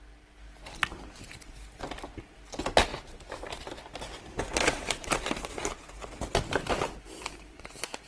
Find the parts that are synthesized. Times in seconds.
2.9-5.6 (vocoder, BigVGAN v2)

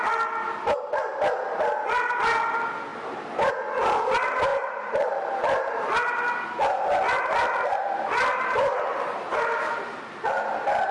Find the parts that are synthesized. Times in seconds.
2.9-3.5 (vocoder, BigVGAN v2); 4.5-5.8

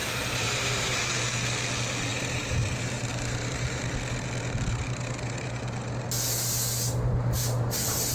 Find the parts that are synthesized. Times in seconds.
0.0-1.0 (vocoder, BigVGAN v2); 2.1-3.9

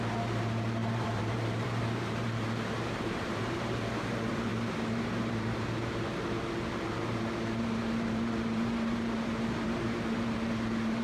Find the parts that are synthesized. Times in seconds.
0.0-6.1 (vocoder, BigVGAN v2); 6.7-11.0

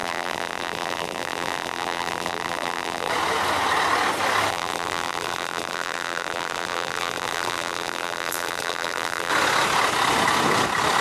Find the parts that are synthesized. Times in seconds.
0.0-3.1 (vocoder, BigVGAN v2); 4.5-9.3